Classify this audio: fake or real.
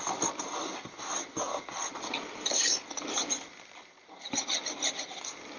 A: real